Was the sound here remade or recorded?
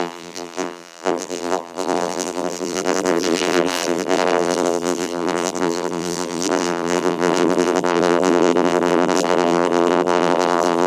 remade